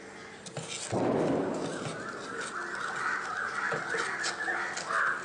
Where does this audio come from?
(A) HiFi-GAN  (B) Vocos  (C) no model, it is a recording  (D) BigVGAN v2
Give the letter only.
C